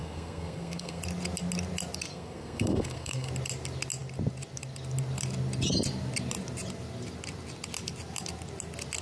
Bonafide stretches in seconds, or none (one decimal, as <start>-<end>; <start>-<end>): 1.0-2.1; 3.3-9.0